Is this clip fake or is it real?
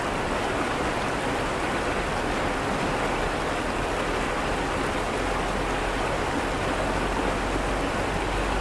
real